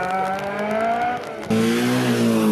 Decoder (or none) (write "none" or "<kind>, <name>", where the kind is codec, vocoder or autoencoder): none